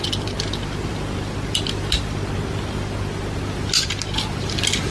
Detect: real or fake real